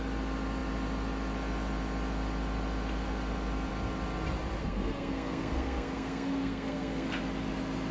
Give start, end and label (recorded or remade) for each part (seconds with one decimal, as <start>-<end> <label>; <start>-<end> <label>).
0.0-4.6 recorded; 4.6-7.2 remade; 7.2-7.9 recorded